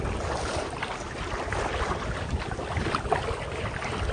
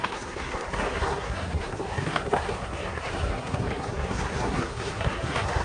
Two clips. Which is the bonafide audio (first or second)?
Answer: first